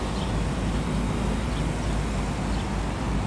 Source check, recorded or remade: recorded